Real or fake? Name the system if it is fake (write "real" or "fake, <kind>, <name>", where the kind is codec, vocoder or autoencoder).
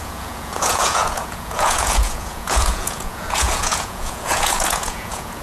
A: fake, vocoder, Vocos